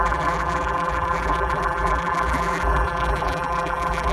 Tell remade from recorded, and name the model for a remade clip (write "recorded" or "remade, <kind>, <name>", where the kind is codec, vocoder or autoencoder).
remade, vocoder, BigVGAN v2